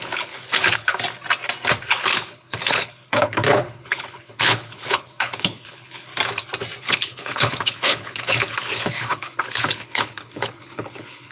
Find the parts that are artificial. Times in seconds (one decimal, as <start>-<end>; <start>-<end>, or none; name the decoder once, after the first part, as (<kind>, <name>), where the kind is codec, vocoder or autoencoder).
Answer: 0.0-0.9 (codec, HILCodec); 1.9-6.1; 6.8-11.3